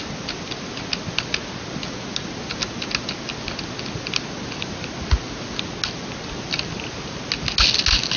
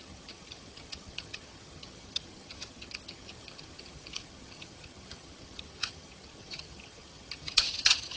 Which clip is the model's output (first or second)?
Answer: second